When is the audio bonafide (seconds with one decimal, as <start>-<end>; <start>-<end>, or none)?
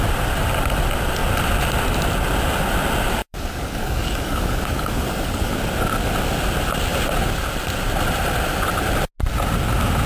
0.0-3.2; 5.5-10.1